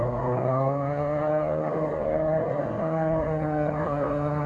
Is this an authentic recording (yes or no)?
no